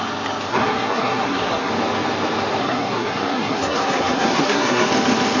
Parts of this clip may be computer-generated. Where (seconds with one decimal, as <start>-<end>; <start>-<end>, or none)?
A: 0.5-1.7; 2.6-4.9